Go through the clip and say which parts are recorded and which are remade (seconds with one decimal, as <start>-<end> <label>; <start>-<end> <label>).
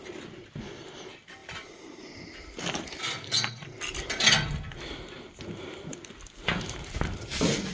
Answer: 0.0-7.7 recorded